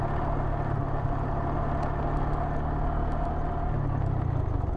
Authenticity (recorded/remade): recorded